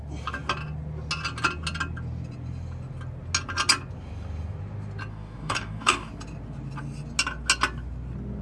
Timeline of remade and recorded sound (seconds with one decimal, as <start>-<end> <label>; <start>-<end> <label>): 0.0-5.1 recorded; 5.1-6.1 remade; 6.1-8.4 recorded